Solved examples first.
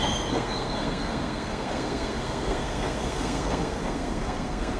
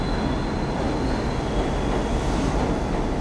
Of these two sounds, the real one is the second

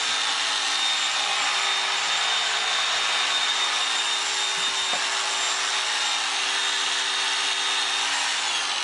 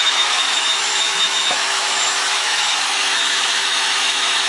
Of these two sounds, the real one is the first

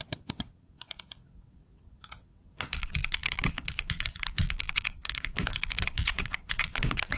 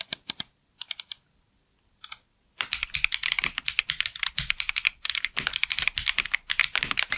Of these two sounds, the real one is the second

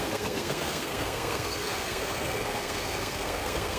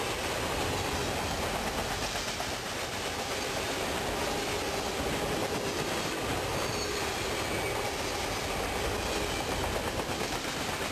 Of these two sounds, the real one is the second